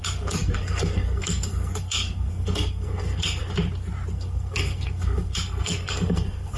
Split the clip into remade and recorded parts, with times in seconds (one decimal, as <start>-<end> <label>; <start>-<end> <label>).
0.0-3.4 remade; 3.4-4.1 recorded; 4.1-6.6 remade